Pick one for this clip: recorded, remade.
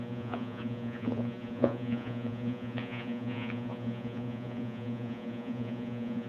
remade